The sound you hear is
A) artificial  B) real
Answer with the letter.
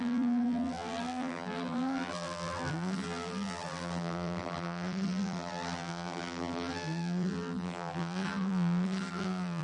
A